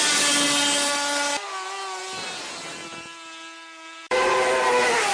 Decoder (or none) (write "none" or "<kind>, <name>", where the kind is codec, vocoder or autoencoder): none